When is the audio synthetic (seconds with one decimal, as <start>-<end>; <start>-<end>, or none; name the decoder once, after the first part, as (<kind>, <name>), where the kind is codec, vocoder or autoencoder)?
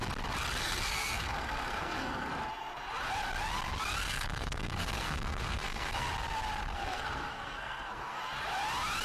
0.6-2.3 (codec, SNAC); 4.0-6.1; 6.7-8.2